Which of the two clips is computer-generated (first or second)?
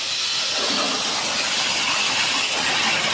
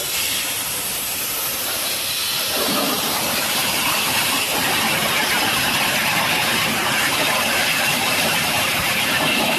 second